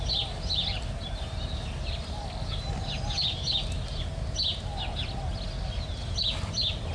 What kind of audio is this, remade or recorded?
recorded